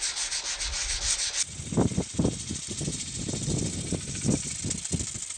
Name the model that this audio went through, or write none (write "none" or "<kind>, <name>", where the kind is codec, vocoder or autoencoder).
none